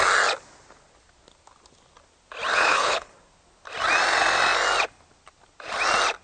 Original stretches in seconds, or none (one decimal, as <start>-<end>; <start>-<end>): 0.0-2.5; 3.1-6.2